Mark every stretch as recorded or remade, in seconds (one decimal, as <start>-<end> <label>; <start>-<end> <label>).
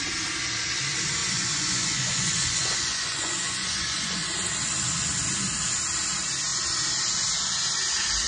0.0-1.2 recorded; 1.2-4.3 remade; 4.3-8.3 recorded